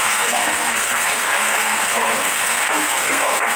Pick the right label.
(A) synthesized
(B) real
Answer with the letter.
A